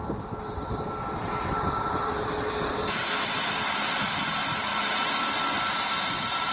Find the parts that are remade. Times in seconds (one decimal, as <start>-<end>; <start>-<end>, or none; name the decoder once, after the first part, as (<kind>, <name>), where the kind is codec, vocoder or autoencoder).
3.9-4.7 (vocoder, BigVGAN v2); 6.0-6.5